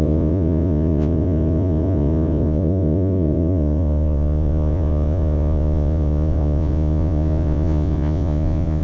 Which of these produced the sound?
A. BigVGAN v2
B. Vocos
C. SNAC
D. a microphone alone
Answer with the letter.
B